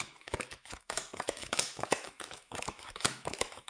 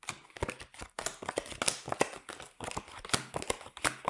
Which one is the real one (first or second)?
second